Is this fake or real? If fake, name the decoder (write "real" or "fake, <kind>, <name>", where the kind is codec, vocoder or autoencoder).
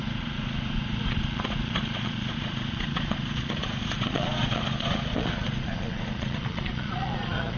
fake, vocoder, Vocos